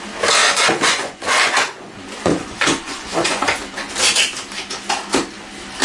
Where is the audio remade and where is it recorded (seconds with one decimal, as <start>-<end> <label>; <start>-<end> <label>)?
0.0-0.4 recorded; 0.4-3.9 remade; 3.9-5.8 recorded